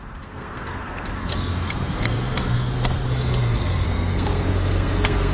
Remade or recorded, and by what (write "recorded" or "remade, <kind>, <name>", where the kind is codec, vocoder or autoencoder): remade, codec, SNAC